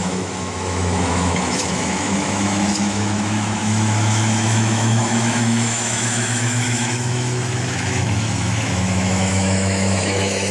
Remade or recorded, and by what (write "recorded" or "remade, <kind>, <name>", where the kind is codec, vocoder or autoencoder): remade, autoencoder, DAC-VAE